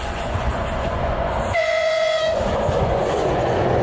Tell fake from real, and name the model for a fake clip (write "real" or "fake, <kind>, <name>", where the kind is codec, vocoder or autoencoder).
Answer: fake, vocoder, Vocos